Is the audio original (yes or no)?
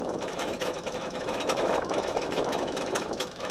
no